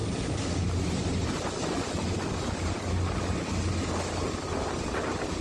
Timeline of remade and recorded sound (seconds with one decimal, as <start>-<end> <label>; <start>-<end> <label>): 0.0-1.9 remade; 1.9-5.4 recorded